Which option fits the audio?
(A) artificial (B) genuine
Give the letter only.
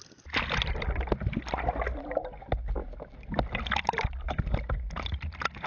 B